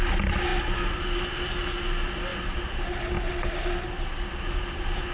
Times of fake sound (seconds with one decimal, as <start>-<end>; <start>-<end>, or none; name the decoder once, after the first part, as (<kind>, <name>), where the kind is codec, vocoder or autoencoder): none